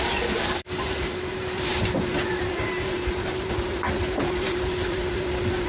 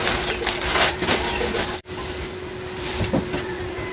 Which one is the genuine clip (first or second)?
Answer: second